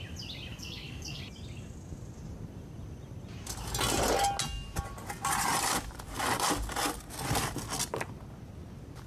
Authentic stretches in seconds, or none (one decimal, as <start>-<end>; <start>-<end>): 0.0-0.5; 1.2-9.1

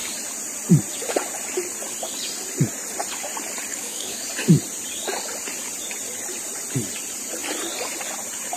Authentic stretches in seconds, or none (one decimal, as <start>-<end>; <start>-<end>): 0.0-3.7; 4.3-8.6